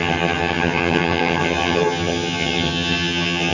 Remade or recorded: remade